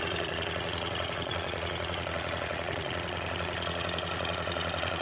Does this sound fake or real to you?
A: fake